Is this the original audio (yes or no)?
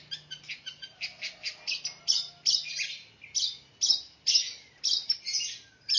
yes